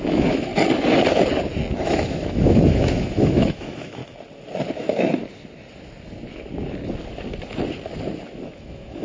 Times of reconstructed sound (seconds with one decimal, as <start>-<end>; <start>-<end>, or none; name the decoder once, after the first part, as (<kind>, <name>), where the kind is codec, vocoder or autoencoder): 0.0-0.5 (autoencoder, DAC-VAE); 1.7-4.0; 4.8-5.2; 8.6-9.0